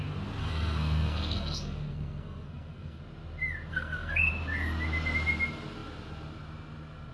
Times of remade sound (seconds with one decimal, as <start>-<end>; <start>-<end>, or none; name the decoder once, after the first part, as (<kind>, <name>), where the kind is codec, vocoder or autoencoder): 0.4-3.0 (codec, SNAC); 3.7-4.3